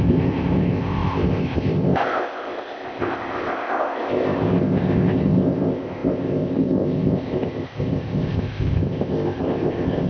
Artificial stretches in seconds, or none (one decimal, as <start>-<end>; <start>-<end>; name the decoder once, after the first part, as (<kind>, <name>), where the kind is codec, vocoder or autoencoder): 0.0-10.1 (codec, ZipCodec)